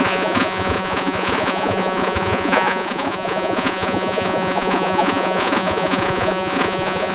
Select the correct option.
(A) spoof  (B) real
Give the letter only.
A